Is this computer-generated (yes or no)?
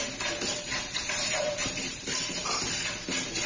yes